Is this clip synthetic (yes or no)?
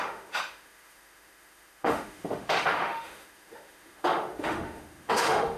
yes